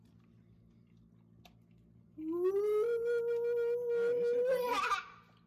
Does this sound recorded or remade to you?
recorded